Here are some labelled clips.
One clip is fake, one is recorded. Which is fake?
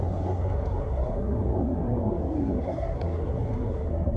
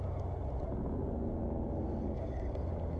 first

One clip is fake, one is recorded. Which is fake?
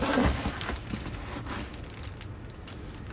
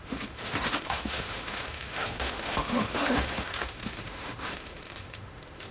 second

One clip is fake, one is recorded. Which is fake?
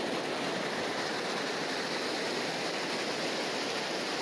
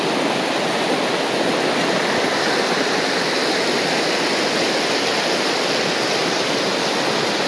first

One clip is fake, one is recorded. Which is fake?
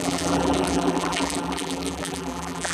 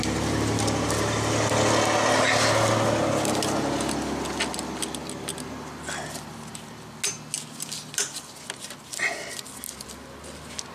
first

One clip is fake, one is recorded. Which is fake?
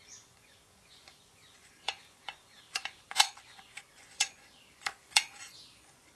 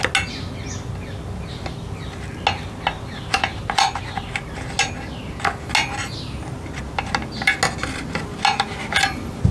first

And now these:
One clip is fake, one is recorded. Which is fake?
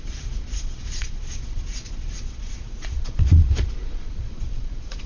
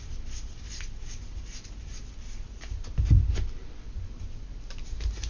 first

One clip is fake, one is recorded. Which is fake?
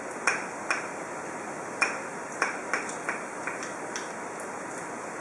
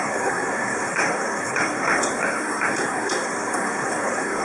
second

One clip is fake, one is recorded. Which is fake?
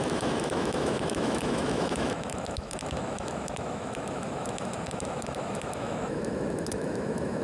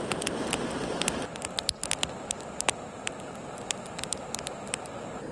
first